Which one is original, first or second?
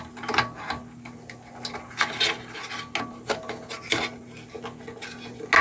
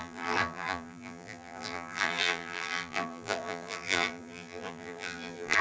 first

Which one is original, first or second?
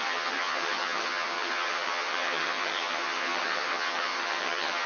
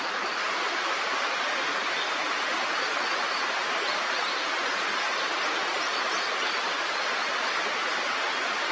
second